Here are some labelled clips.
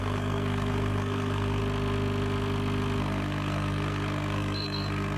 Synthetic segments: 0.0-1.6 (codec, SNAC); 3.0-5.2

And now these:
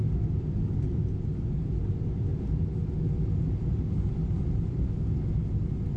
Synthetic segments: none

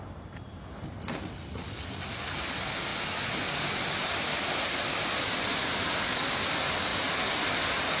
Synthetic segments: none

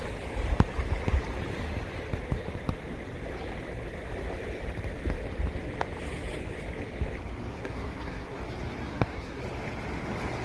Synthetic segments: 7.5-8.4 (codec, SNAC); 8.9-9.4

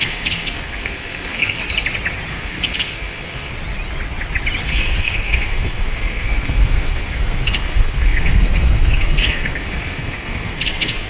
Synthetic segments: 0.0-1.6 (codec, SNAC); 2.3-3.5; 4.6-11.1

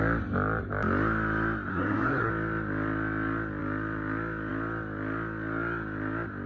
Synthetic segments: 1.7-2.3 (codec, SNAC)